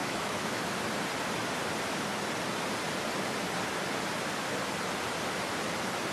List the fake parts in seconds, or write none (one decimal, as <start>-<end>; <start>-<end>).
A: 0.0-0.6